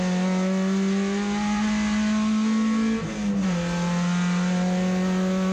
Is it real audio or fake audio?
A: real